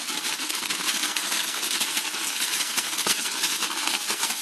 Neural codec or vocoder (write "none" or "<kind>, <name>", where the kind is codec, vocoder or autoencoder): codec, SNAC